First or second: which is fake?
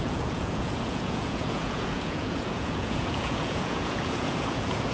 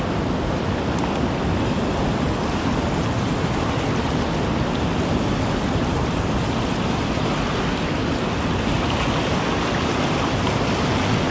first